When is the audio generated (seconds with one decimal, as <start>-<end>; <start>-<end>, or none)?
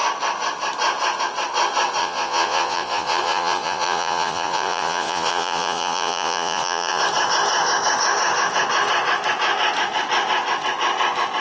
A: 2.0-7.0